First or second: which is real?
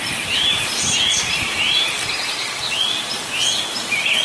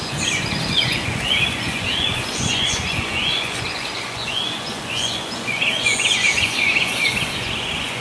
first